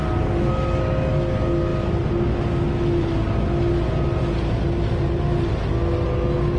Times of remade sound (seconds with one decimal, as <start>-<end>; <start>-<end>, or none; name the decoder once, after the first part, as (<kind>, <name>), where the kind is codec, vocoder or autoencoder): none